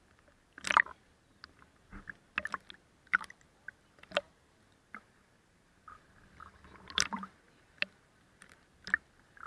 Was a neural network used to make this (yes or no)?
no